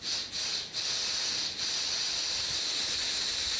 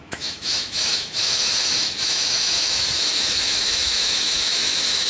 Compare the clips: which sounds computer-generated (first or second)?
second